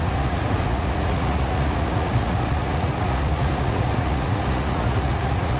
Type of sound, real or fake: fake